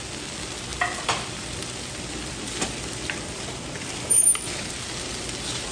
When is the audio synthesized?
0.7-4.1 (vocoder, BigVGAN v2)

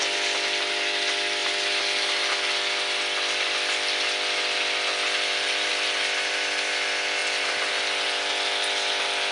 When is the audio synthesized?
1.4-5.7 (vocoder, BigVGAN v2)

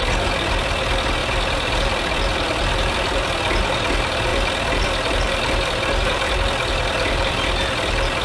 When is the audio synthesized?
1.2-2.9 (vocoder, BigVGAN v2); 4.3-8.2

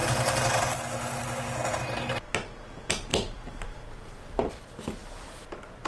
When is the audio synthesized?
3.1-4.5 (vocoder, BigVGAN v2); 5.0-5.9

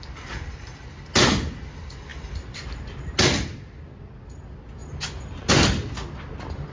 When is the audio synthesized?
none

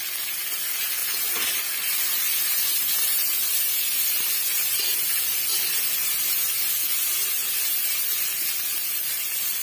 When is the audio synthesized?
3.0-6.5 (vocoder, BigVGAN v2)

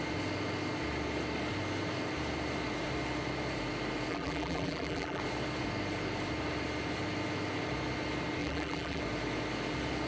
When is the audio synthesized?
4.1-5.2 (vocoder, BigVGAN v2); 8.4-9.0